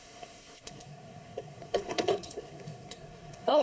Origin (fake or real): fake